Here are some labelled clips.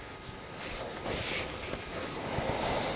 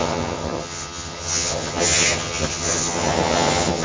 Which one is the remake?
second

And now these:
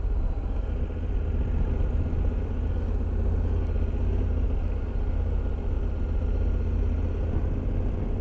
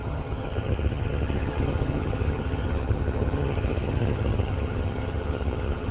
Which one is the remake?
second